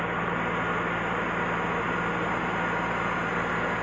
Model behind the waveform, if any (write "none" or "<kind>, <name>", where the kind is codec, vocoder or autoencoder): none